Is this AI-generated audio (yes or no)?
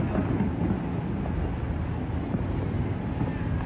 no